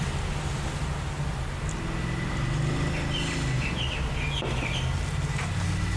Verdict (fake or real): real